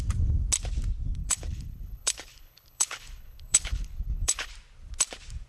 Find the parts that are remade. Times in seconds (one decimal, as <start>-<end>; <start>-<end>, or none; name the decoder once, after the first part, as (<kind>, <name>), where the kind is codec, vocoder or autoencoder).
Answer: 1.2-4.5 (codec, HILCodec)